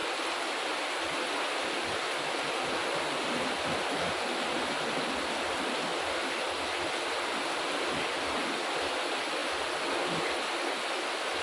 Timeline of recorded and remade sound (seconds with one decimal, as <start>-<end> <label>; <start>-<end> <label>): 0.0-5.9 remade; 5.9-7.8 recorded; 7.8-11.4 remade